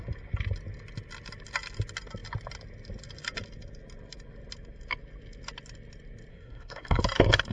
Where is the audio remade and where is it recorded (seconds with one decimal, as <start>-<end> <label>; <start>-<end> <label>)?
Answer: 0.0-6.3 recorded; 6.3-7.0 remade; 7.0-7.5 recorded